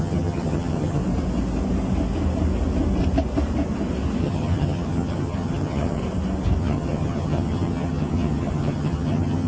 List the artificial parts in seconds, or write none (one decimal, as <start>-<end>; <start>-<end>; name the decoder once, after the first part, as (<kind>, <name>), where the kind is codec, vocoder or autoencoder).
0.0-1.0 (vocoder, HiFi-GAN); 4.2-6.0; 6.6-9.5